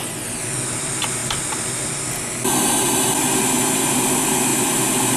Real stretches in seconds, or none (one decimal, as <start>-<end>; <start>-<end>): 0.0-5.2